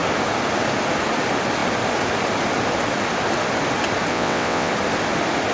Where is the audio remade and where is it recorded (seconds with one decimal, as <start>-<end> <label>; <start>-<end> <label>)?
0.0-4.1 recorded; 4.1-4.7 remade; 4.7-5.5 recorded